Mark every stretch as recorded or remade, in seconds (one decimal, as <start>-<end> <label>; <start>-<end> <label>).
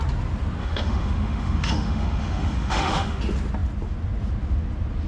0.0-0.6 recorded; 0.6-3.2 remade; 3.2-5.1 recorded